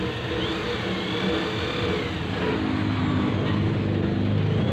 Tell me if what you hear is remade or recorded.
recorded